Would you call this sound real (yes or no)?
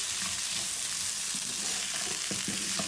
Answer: yes